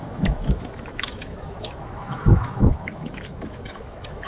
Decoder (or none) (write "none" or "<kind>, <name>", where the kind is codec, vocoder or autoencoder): autoencoder, DAC-VAE